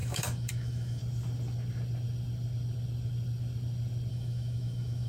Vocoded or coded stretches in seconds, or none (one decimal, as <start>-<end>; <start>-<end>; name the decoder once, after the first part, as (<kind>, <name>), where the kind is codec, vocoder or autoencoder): 0.0-1.0 (autoencoder, DAC-VAE); 4.1-5.1